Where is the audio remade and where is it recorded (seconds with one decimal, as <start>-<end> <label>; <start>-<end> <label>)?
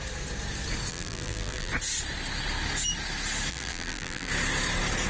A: 0.0-0.9 recorded; 0.9-1.7 remade; 1.7-3.5 recorded; 3.5-4.3 remade; 4.3-5.1 recorded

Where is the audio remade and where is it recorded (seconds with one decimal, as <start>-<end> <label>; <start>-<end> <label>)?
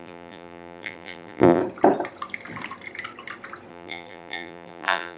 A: 0.0-1.6 remade; 1.6-3.7 recorded; 3.7-5.2 remade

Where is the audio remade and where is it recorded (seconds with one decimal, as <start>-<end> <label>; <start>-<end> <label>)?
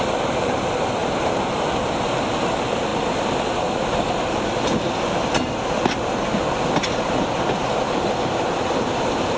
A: 0.0-2.9 remade; 2.9-7.0 recorded; 7.0-9.4 remade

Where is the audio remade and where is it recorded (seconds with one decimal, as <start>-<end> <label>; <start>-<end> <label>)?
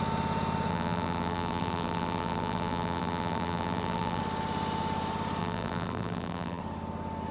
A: 0.0-0.7 recorded; 0.7-4.2 remade; 4.2-5.4 recorded; 5.4-6.6 remade; 6.6-7.3 recorded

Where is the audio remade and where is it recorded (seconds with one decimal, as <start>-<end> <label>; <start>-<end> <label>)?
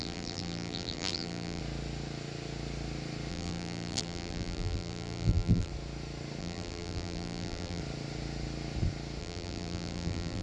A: 0.0-1.6 remade; 1.6-3.3 recorded; 3.3-5.7 remade; 5.7-6.4 recorded; 6.4-7.8 remade; 7.8-9.2 recorded; 9.2-10.4 remade